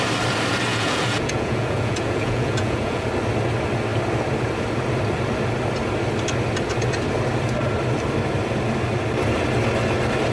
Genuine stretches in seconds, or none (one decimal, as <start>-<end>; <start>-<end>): 0.0-0.7; 3.1-10.3